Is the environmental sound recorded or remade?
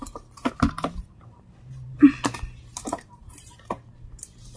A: remade